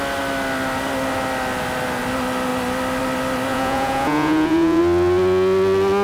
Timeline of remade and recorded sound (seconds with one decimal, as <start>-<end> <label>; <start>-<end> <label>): 0.0-3.5 recorded; 3.5-4.8 remade; 4.8-6.0 recorded